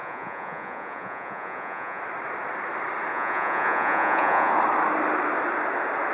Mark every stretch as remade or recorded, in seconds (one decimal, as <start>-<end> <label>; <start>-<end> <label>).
0.0-2.0 remade; 2.0-3.1 recorded; 3.1-4.5 remade; 4.5-6.1 recorded